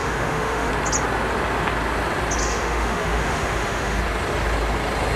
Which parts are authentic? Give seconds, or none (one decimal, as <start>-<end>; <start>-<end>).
0.7-2.4; 4.0-5.2